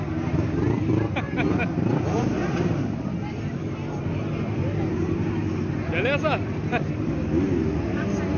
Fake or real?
real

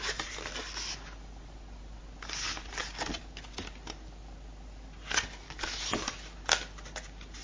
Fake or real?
real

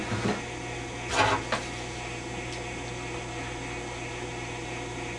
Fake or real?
real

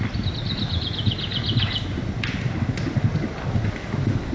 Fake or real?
real